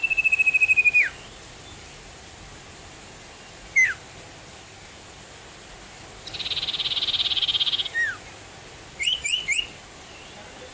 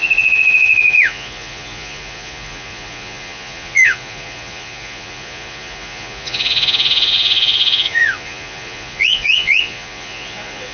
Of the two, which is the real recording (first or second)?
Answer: first